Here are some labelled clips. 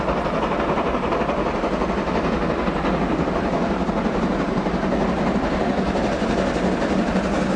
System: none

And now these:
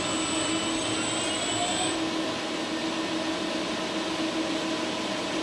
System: none